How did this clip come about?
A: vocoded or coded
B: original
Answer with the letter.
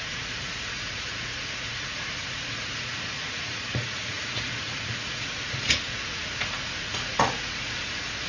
A